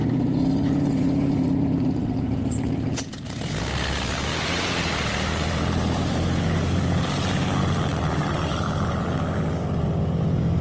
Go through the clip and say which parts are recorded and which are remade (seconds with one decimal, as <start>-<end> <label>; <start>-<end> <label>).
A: 0.0-2.5 remade; 2.5-4.3 recorded; 4.3-9.1 remade; 9.1-10.6 recorded